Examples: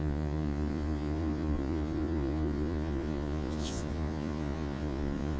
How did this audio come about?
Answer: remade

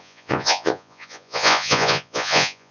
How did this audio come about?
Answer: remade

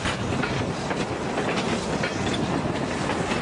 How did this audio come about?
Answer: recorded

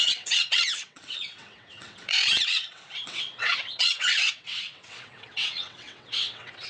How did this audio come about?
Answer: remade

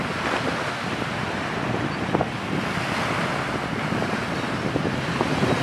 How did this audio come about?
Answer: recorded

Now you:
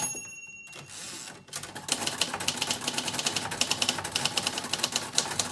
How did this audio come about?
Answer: recorded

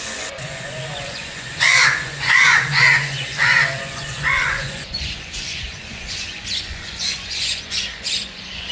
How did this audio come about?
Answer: remade